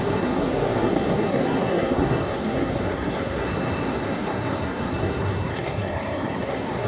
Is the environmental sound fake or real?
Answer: fake